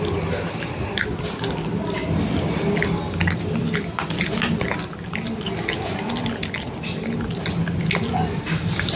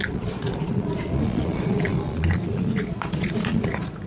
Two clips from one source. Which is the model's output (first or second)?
second